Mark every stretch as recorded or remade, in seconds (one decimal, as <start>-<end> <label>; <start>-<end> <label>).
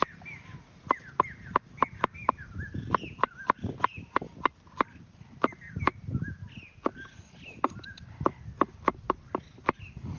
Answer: 0.0-10.2 recorded